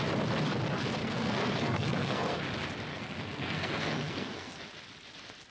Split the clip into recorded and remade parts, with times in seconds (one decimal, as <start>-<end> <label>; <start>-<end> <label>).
0.0-1.0 recorded; 1.0-2.4 remade; 2.4-2.9 recorded; 2.9-4.6 remade; 4.6-5.5 recorded